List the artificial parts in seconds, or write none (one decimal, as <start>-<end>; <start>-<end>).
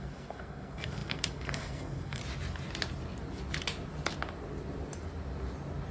0.0-2.2